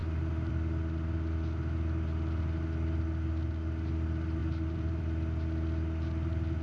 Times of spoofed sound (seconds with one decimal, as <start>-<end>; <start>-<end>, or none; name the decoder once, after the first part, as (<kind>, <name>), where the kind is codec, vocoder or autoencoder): 0.0-0.5 (vocoder, BigVGAN v2); 4.4-5.0